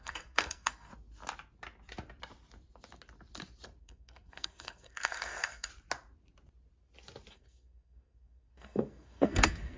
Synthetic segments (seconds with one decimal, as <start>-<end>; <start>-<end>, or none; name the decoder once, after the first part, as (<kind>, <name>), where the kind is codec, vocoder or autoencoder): 0.0-0.9 (codec, SNAC); 3.8-5.7; 7.3-9.8